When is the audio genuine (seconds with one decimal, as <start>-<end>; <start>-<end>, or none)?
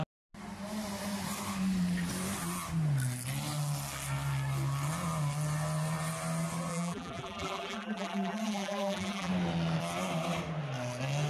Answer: 0.0-6.7; 9.3-11.3